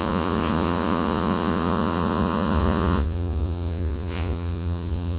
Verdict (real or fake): fake